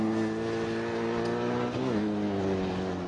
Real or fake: real